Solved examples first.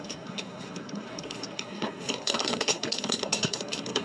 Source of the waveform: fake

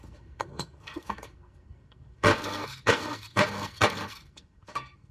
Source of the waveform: fake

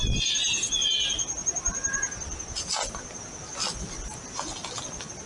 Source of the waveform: real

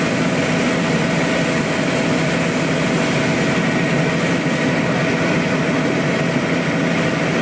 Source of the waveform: real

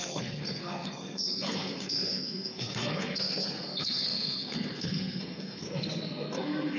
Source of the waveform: fake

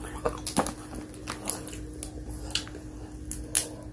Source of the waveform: real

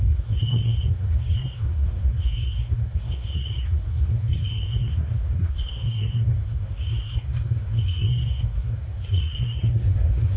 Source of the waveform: fake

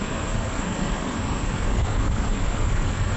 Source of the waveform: fake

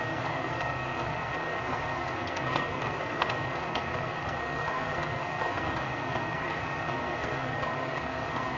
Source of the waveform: fake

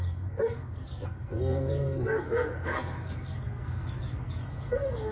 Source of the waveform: fake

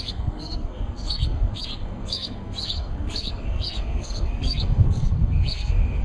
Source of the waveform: fake